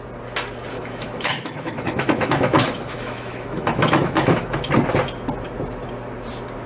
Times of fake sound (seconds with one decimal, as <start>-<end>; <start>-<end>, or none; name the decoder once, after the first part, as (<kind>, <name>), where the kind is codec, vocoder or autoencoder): 0.7-4.7 (autoencoder, DAC-VAE)